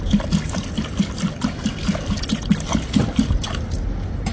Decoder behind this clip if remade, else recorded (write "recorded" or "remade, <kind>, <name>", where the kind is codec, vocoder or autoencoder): recorded